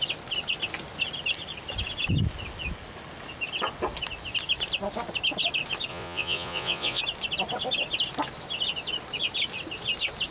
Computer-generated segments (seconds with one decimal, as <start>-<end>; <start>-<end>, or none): 5.9-7.0